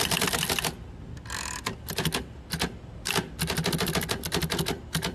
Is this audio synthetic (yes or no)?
no